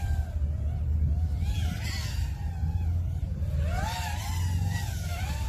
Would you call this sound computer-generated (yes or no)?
no